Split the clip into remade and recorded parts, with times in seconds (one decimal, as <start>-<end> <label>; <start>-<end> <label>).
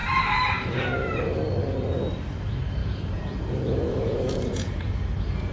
0.0-2.8 recorded; 2.8-4.7 remade; 4.7-5.5 recorded